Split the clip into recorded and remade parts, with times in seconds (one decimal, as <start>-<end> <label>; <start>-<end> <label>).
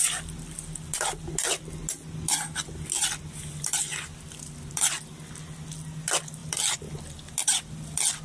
0.0-8.2 recorded